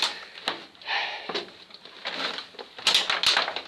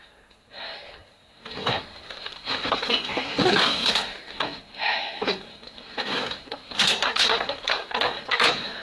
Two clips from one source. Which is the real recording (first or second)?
first